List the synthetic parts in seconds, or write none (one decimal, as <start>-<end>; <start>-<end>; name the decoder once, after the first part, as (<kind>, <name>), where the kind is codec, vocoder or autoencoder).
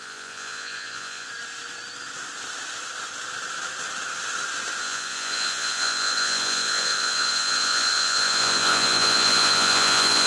0.0-1.3 (vocoder, Vocos); 4.8-10.3